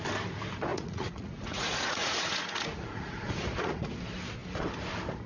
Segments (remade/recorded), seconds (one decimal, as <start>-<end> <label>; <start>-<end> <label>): 0.0-0.7 recorded; 0.7-3.9 remade; 3.9-5.3 recorded

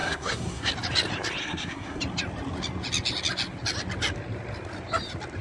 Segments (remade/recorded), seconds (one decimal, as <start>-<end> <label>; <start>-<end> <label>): 0.0-0.7 remade; 0.7-1.4 recorded; 1.4-2.0 remade; 2.0-5.4 recorded

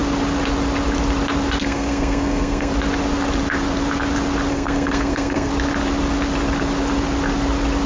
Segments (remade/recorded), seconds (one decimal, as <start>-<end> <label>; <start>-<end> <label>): 0.0-1.6 recorded; 1.6-2.7 remade; 2.7-4.5 recorded; 4.5-5.5 remade; 5.5-7.9 recorded